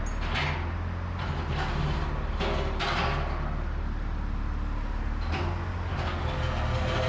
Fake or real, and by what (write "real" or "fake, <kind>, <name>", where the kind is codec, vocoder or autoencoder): real